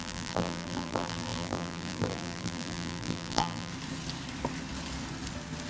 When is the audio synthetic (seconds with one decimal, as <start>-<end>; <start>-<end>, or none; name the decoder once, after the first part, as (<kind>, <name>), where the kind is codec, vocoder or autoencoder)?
0.0-3.7 (vocoder, BigVGAN v2)